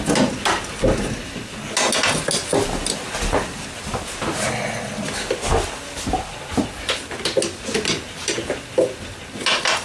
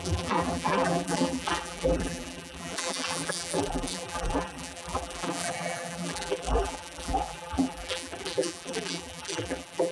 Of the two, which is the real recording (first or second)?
first